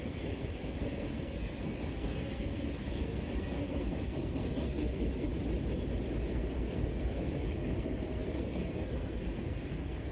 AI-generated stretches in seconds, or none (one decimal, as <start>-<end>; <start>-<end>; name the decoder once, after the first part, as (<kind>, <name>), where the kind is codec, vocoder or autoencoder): 0.0-5.3 (codec, SNAC); 6.3-10.1